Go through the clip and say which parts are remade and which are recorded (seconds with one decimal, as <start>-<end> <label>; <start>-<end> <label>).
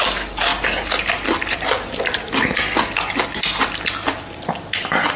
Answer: 0.0-5.2 recorded